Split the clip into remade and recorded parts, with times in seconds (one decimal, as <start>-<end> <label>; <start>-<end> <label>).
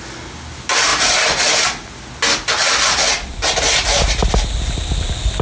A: 0.0-5.4 recorded